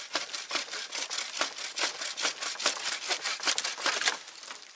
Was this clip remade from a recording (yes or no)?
no